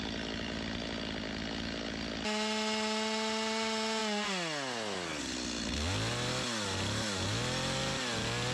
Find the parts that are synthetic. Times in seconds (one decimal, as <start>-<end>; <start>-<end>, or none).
none